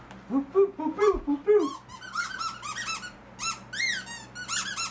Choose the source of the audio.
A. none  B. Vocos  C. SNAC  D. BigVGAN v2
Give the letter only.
A